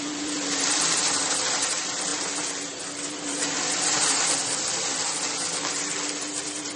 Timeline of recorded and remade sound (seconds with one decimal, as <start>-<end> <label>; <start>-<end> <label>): 0.0-2.1 remade; 2.1-2.7 recorded; 2.7-6.8 remade